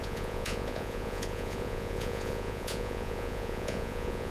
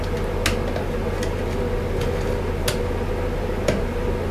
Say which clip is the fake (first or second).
first